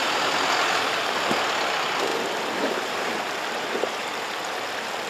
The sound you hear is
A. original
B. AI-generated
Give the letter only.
B